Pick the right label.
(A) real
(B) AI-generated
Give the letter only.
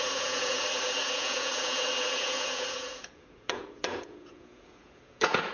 B